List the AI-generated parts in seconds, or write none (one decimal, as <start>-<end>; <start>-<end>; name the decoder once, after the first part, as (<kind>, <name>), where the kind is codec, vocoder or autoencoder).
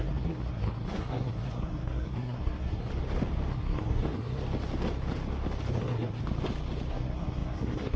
0.0-2.9 (codec, SNAC); 3.5-4.4; 5.8-6.2; 6.9-8.0